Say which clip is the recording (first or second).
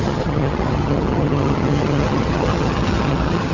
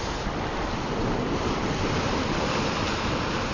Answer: second